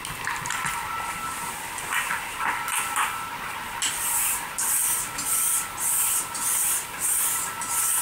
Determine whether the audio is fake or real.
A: real